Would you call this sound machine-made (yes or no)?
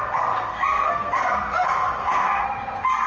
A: yes